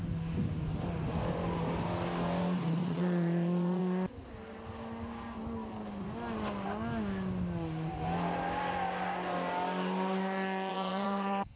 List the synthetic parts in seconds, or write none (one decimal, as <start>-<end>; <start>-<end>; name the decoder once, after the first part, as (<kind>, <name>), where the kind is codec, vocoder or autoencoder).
2.8-3.8 (vocoder, Vocos); 10.7-11.6